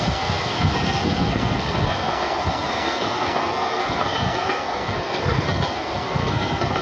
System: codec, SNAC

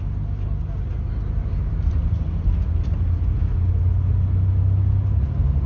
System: none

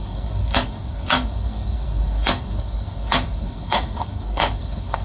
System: codec, SNAC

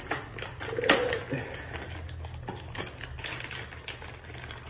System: none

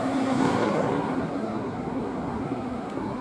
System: codec, SNAC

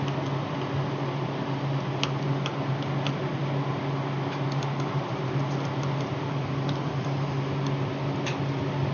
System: none